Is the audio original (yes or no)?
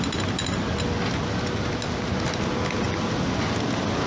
yes